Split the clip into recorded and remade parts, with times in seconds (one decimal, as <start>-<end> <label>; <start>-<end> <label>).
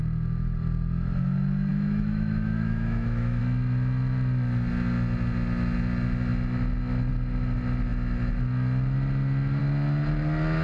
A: 0.0-1.7 recorded; 1.7-3.4 remade; 3.4-10.6 recorded